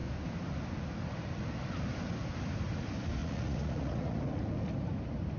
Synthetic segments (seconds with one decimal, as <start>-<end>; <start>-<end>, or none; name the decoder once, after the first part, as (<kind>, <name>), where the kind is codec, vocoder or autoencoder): 3.2-4.2 (vocoder, Vocos)